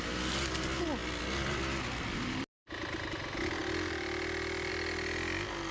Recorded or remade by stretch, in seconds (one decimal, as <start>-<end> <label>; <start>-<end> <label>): 0.0-5.7 recorded